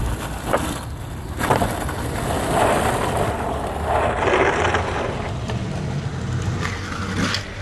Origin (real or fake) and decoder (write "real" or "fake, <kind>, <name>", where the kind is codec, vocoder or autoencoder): real